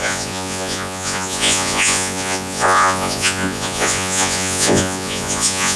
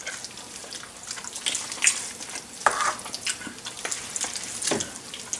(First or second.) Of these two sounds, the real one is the second